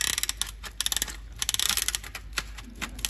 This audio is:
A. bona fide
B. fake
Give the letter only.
A